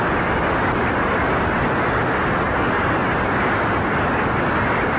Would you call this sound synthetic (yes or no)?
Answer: no